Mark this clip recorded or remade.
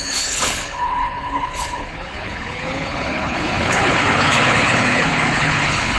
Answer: remade